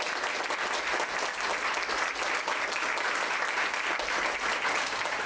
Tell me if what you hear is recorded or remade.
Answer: recorded